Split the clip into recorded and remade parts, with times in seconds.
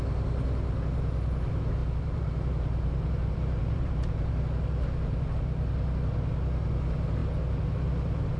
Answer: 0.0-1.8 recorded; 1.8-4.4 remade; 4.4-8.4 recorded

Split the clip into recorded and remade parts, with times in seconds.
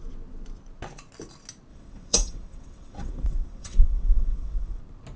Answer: 0.0-1.7 recorded; 1.7-4.8 remade; 4.8-5.2 recorded